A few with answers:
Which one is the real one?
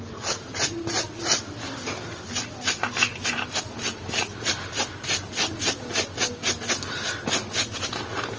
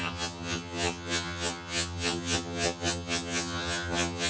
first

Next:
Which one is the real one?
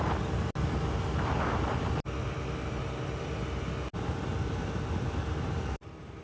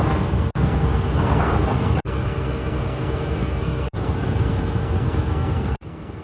first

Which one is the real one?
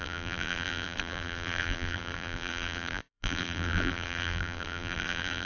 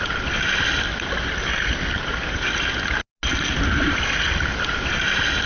second